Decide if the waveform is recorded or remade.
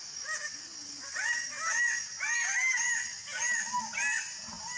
recorded